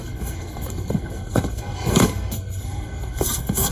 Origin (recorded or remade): remade